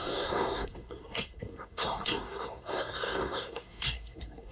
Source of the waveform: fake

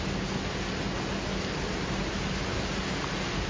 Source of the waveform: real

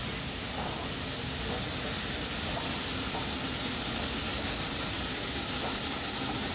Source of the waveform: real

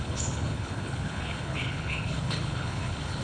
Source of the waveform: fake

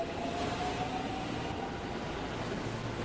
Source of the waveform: real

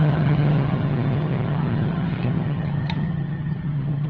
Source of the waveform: fake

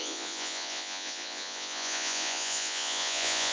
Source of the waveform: fake